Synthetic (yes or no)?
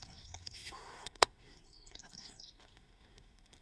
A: yes